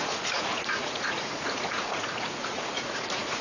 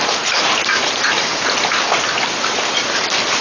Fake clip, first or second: first